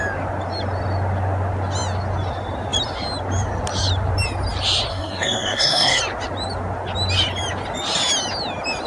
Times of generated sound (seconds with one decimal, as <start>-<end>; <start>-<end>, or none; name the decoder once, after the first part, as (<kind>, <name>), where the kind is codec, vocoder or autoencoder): 4.9-6.0 (codec, SNAC)